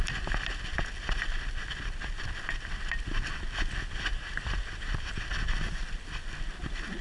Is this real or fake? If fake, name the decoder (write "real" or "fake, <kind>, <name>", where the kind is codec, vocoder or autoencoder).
real